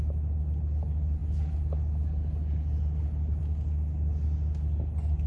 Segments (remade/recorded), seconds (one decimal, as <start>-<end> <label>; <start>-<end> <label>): 0.0-5.3 recorded